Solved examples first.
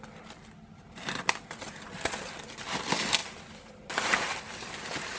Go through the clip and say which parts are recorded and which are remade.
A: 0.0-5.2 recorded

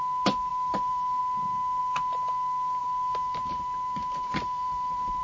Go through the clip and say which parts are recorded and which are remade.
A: 0.0-0.5 recorded; 0.5-1.2 remade; 1.2-2.8 recorded; 2.8-5.2 remade

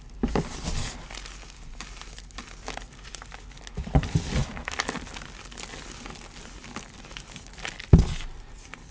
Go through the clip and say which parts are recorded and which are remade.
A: 0.0-8.9 recorded

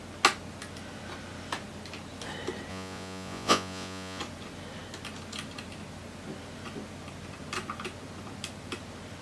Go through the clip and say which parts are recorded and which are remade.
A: 0.0-2.7 recorded; 2.7-4.2 remade; 4.2-9.2 recorded

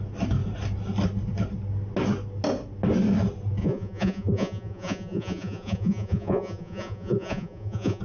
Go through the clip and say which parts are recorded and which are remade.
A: 0.0-3.6 recorded; 3.6-8.0 remade

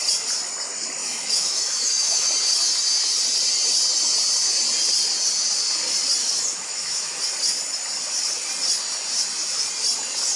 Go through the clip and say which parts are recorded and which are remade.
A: 0.0-1.0 recorded; 1.0-2.3 remade; 2.3-6.2 recorded; 6.2-7.2 remade; 7.2-10.4 recorded

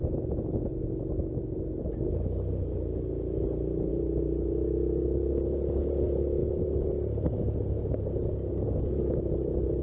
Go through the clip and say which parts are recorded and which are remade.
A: 0.0-0.7 recorded; 0.7-3.9 remade; 3.9-6.4 recorded; 6.4-7.3 remade; 7.3-9.8 recorded